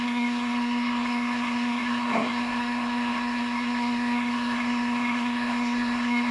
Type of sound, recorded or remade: remade